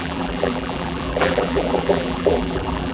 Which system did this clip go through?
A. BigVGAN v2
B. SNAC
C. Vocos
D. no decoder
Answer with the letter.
A